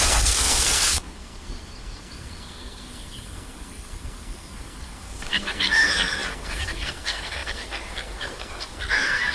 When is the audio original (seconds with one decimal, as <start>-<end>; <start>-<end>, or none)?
none